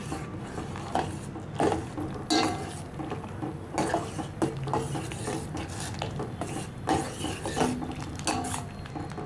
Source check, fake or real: real